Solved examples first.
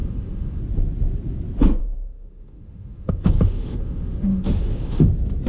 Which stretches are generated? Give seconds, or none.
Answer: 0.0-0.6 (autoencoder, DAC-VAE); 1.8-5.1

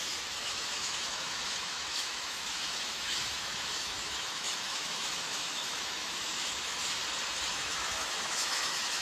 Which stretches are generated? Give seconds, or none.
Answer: 0.0-7.0 (autoencoder, DAC-VAE); 7.5-9.0